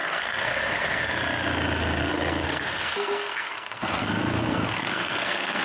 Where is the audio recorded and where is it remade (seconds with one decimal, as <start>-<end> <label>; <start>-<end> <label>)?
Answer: 0.0-1.1 remade; 1.1-2.0 recorded; 2.0-5.6 remade